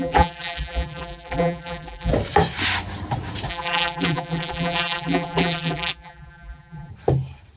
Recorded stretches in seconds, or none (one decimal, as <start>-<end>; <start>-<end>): 2.1-3.5; 6.9-7.6